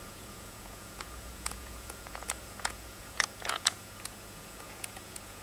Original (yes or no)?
no